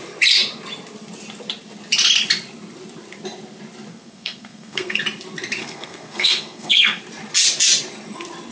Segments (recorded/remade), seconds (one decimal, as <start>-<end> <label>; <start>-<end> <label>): 0.0-3.9 recorded; 3.9-5.0 remade; 5.0-5.6 recorded; 5.6-7.0 remade; 7.0-8.5 recorded

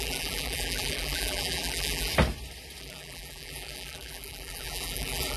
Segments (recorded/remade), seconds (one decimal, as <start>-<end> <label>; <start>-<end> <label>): 0.0-2.1 remade; 2.1-2.8 recorded; 2.8-5.4 remade

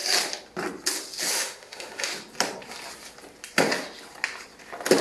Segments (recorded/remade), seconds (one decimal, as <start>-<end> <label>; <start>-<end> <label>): 0.0-1.3 recorded; 1.3-2.1 remade; 2.1-5.0 recorded

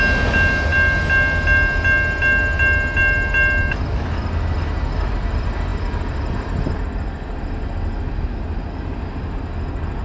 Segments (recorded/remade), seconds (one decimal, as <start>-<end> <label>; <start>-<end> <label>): 0.0-10.0 recorded